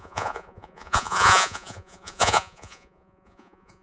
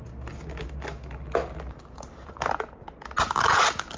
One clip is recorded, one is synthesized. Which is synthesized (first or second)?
first